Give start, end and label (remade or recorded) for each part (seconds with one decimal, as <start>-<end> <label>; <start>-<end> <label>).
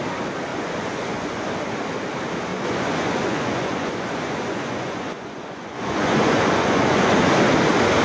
0.0-0.5 recorded; 0.5-1.5 remade; 1.5-2.5 recorded; 2.5-7.3 remade; 7.3-8.0 recorded